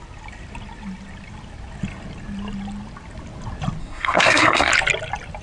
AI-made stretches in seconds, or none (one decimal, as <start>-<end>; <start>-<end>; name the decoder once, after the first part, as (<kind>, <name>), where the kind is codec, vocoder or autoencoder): 3.8-4.7 (codec, SNAC)